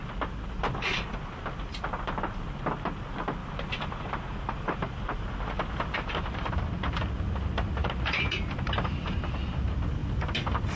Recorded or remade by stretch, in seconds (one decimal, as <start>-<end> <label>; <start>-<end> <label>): 0.0-3.4 recorded; 3.4-5.0 remade; 5.0-7.8 recorded; 7.8-9.3 remade; 9.3-10.8 recorded